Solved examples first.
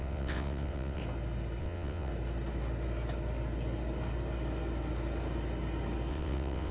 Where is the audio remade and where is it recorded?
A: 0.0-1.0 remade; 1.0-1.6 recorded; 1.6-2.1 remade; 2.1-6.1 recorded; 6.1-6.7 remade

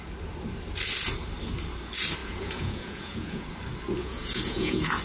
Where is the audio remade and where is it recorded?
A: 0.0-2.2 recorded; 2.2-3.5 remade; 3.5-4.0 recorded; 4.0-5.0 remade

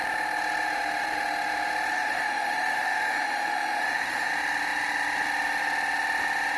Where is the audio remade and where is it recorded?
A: 0.0-1.9 recorded; 1.9-4.3 remade; 4.3-6.6 recorded